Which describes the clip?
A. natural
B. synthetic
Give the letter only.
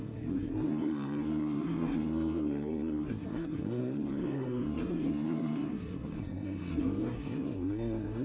B